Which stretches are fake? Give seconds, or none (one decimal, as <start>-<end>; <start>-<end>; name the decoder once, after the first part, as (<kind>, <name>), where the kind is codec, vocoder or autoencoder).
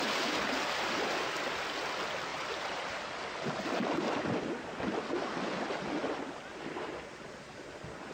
2.3-3.1 (vocoder, BigVGAN v2)